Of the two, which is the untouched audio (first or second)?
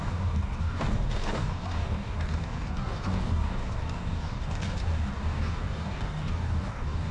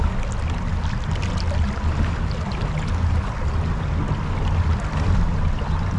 second